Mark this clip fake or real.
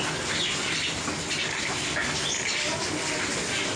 real